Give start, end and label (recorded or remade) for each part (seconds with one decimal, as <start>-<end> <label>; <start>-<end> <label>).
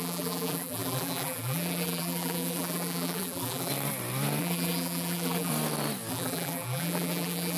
0.0-3.7 remade; 3.7-4.4 recorded; 4.4-5.5 remade; 5.5-6.1 recorded; 6.1-7.6 remade